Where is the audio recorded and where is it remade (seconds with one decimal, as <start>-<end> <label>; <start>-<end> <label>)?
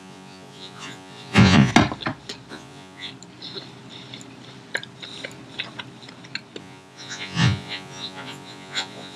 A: 0.0-1.7 remade; 1.7-2.5 recorded; 2.5-3.1 remade; 3.1-6.6 recorded; 6.6-9.2 remade